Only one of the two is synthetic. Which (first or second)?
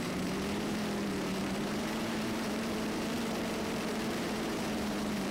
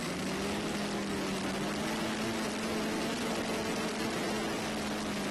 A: first